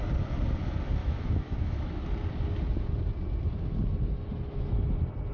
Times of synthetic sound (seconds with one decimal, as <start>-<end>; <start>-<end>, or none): 1.0-1.9